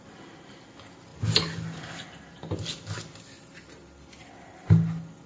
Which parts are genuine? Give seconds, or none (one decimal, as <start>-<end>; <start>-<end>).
0.0-5.3